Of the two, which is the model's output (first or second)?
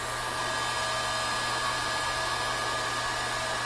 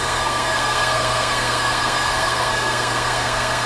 second